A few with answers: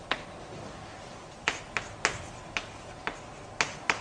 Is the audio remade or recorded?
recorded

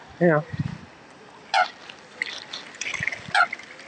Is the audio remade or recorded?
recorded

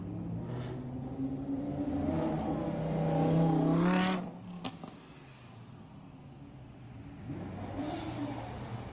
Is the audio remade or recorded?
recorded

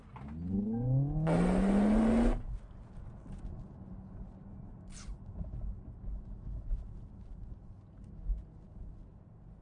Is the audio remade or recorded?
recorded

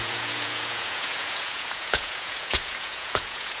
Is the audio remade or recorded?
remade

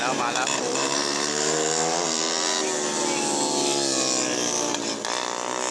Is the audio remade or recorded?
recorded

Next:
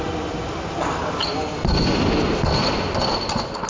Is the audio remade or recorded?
recorded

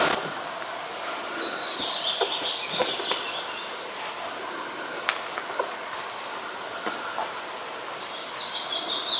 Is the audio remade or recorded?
recorded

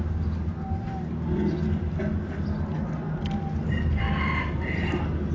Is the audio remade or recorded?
recorded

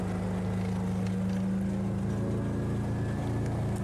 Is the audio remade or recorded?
recorded